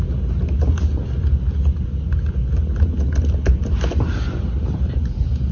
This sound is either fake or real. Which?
real